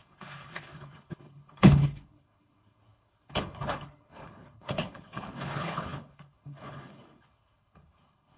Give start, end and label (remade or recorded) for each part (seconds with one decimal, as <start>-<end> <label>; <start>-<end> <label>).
0.0-8.4 remade